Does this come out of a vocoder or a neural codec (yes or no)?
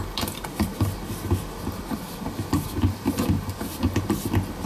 no